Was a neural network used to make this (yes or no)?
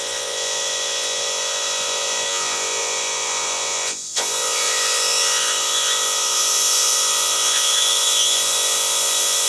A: yes